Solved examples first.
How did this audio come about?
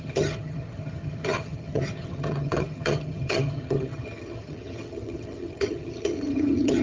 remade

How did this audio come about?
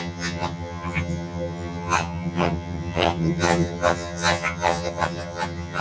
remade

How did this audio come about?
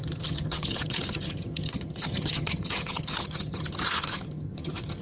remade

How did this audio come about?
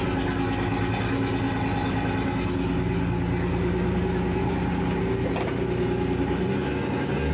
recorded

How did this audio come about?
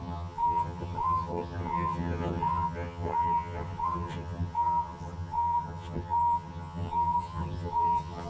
remade